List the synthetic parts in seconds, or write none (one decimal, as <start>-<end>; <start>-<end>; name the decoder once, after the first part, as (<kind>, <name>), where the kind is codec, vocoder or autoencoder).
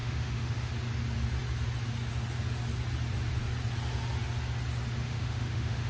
0.0-0.7 (autoencoder, DAC-VAE); 5.0-5.9